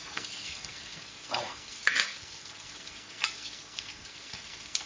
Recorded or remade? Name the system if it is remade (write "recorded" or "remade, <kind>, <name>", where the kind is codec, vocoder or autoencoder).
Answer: remade, codec, SNAC